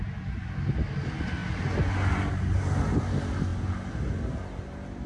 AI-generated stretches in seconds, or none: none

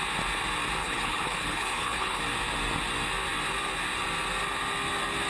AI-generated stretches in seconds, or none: 0.8-2.2

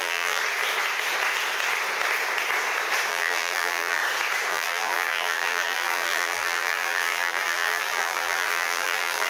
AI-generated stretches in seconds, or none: 0.0-0.4; 3.1-4.0; 4.5-9.3

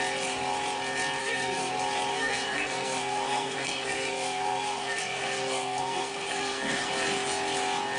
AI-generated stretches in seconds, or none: 1.2-1.7; 2.1-6.9

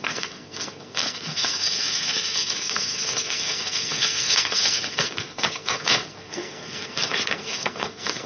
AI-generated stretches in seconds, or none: 0.0-8.3

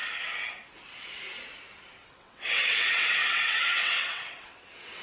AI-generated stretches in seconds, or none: 2.0-5.0

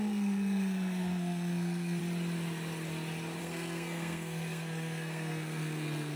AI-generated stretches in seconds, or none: 0.0-2.0; 3.4-6.2

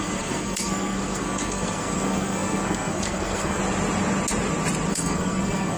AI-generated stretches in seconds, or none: 0.0-3.6; 4.9-5.8